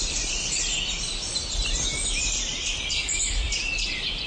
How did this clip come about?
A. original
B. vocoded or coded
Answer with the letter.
A